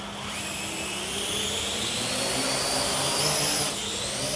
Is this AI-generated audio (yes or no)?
no